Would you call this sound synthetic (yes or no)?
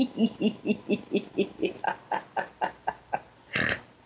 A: no